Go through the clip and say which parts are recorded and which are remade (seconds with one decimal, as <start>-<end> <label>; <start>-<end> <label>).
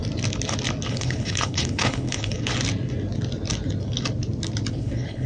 0.0-0.9 recorded; 0.9-2.5 remade; 2.5-4.7 recorded; 4.7-5.3 remade